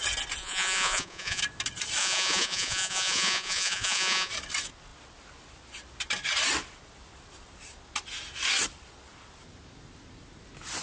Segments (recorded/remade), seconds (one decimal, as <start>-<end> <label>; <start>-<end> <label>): 0.0-0.4 recorded; 0.4-1.4 remade; 1.4-2.0 recorded; 2.0-4.3 remade; 4.3-10.8 recorded